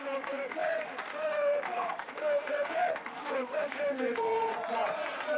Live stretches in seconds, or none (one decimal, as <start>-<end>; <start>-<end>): 4.5-5.4